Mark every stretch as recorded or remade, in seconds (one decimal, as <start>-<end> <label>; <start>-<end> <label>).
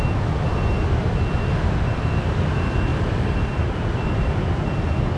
0.0-2.9 recorded; 2.9-4.3 remade; 4.3-5.2 recorded